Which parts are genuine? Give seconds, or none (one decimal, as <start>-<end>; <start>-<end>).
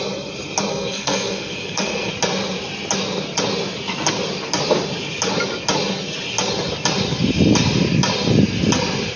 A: 0.0-0.7; 2.1-9.2